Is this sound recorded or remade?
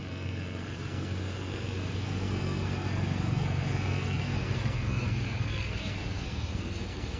remade